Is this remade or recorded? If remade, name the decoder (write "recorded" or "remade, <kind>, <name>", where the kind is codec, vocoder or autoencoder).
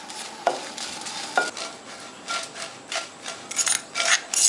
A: recorded